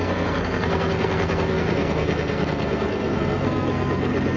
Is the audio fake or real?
fake